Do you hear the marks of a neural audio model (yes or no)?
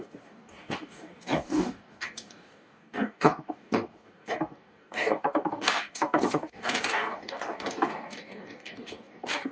yes